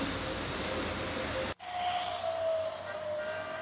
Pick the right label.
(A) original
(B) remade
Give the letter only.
A